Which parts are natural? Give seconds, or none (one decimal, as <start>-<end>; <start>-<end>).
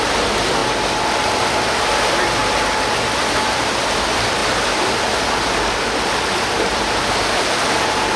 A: 0.6-1.8